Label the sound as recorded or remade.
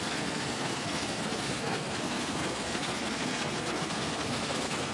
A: remade